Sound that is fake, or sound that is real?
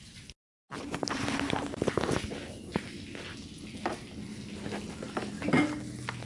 real